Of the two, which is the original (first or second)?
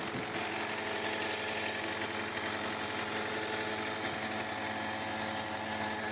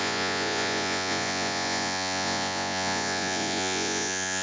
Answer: first